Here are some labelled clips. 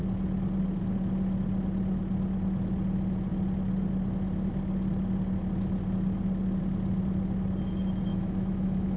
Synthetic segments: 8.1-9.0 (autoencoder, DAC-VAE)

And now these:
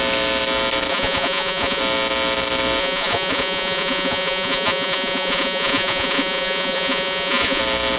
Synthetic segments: 0.9-1.8 (vocoder, Vocos); 2.8-7.6

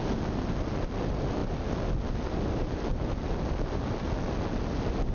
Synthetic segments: none

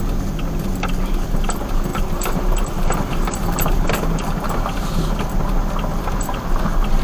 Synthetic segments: 1.9-4.3 (vocoder, BigVGAN v2)

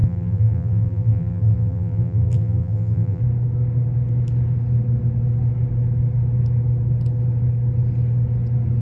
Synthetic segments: 0.0-3.2 (vocoder, BigVGAN v2)

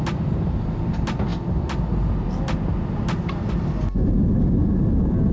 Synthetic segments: none

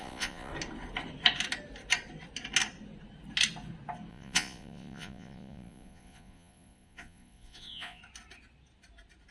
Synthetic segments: 0.0-0.5 (vocoder, Vocos); 4.1-8.0

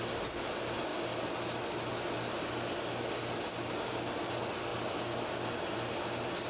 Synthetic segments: none